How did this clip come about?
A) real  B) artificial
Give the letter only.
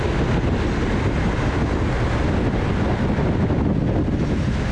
A